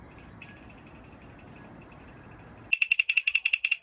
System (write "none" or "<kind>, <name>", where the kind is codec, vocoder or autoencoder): none